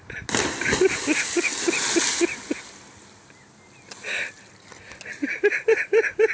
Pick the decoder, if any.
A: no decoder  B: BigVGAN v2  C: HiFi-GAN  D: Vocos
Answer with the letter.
A